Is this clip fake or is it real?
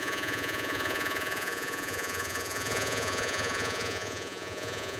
fake